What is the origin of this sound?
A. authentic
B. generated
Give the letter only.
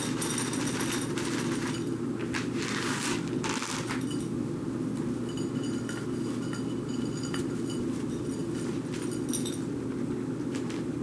A